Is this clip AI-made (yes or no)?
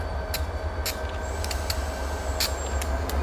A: no